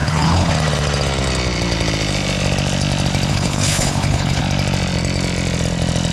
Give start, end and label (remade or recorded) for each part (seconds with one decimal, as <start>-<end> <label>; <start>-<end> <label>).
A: 0.0-0.5 remade; 0.5-3.3 recorded; 3.3-4.4 remade; 4.4-6.1 recorded